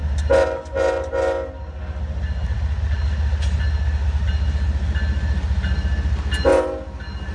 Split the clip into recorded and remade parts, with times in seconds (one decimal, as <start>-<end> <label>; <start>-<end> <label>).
0.0-7.3 recorded